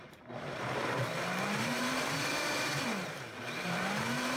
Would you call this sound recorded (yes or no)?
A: no